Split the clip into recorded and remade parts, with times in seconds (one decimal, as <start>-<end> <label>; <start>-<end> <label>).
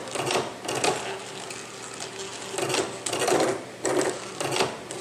0.0-5.0 recorded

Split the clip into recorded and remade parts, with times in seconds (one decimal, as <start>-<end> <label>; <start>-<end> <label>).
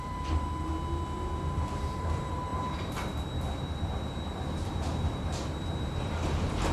0.0-0.7 remade; 0.7-1.5 recorded; 1.5-6.7 remade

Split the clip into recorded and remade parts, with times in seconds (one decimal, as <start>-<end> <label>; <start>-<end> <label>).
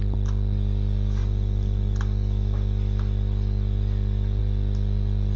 0.0-5.4 recorded